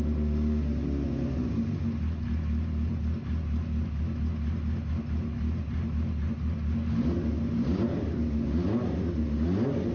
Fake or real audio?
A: real